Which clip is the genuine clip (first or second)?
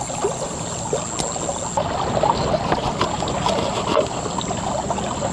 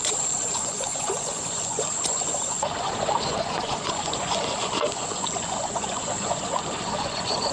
first